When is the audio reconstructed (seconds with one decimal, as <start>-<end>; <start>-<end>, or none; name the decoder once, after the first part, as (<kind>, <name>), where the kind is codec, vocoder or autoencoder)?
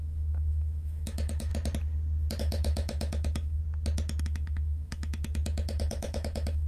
0.0-1.5 (autoencoder, DAC-VAE); 2.4-3.6; 4.2-6.7